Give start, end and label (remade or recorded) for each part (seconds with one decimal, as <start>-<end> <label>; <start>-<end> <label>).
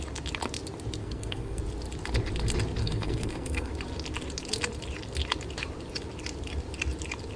0.0-1.0 recorded; 1.0-1.6 remade; 1.6-2.8 recorded; 2.8-3.7 remade; 3.7-7.4 recorded